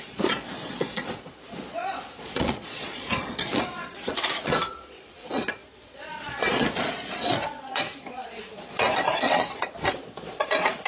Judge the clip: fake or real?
fake